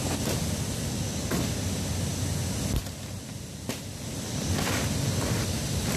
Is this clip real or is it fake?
real